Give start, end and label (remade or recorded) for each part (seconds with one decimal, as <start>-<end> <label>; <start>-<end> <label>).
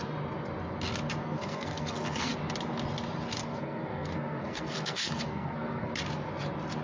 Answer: 0.0-1.2 recorded; 1.2-2.3 remade; 2.3-3.4 recorded; 3.4-5.9 remade; 5.9-6.8 recorded